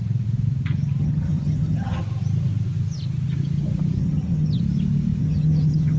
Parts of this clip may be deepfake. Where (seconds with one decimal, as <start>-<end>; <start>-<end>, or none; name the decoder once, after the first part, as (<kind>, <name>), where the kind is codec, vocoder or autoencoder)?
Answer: 1.0-2.0 (vocoder, HiFi-GAN); 4.0-4.6; 5.2-6.0